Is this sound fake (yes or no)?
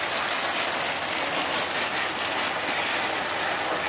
no